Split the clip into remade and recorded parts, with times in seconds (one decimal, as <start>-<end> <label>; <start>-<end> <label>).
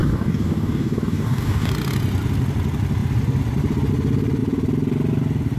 0.0-1.7 remade; 1.7-5.6 recorded